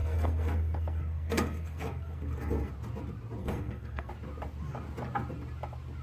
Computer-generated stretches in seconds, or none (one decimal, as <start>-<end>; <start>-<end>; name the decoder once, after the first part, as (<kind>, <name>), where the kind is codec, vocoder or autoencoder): 0.0-2.7 (codec, SNAC); 3.4-4.1

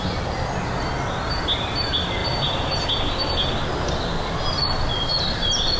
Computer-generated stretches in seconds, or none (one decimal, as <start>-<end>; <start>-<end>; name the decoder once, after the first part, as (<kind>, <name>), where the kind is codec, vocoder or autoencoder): none

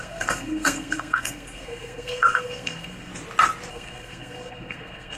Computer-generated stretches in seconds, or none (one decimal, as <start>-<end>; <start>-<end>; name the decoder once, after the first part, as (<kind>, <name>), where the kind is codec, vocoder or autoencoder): 0.0-3.1 (codec, SNAC); 3.7-5.2

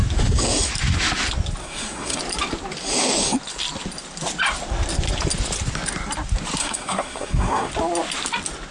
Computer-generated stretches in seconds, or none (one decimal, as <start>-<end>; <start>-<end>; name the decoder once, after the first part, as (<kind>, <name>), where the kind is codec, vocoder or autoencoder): 1.6-2.2 (codec, SNAC); 6.6-7.7

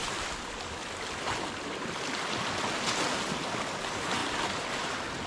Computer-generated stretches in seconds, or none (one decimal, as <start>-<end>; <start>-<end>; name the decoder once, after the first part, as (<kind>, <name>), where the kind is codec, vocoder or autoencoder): none

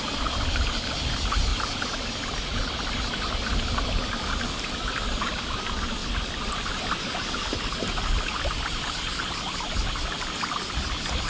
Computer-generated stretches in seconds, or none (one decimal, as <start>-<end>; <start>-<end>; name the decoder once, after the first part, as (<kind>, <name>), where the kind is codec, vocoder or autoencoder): none